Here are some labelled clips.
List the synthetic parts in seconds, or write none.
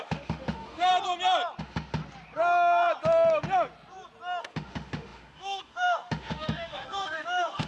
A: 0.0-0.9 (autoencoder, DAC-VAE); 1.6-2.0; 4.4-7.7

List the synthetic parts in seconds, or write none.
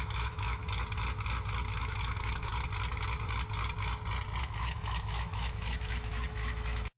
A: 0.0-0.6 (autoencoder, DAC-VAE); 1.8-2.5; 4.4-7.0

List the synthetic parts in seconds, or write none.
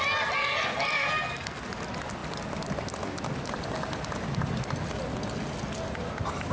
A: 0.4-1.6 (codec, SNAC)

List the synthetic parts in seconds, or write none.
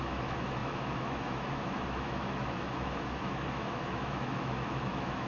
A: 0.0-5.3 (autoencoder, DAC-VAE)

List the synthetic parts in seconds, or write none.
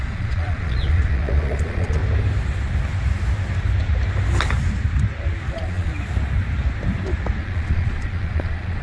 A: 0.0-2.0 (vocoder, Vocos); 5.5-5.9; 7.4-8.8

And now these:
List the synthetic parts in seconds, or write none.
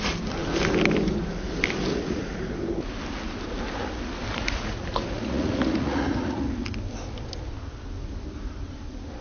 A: 1.9-2.4 (vocoder, Vocos); 4.3-6.5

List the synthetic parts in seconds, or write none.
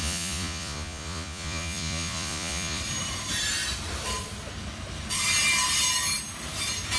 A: 0.0-2.8 (vocoder, Vocos)